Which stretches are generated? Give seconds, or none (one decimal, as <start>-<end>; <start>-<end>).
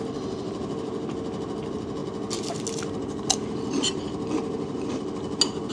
none